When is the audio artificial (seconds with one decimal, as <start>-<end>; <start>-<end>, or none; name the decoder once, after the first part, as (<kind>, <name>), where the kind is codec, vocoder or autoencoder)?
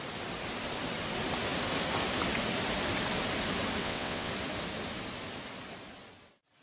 3.8-4.3 (vocoder, WaveNeXt)